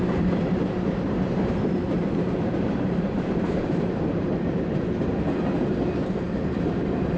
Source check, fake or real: fake